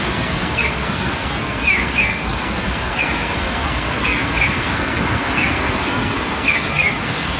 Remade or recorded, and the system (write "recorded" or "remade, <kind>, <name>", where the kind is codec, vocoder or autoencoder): remade, codec, SNAC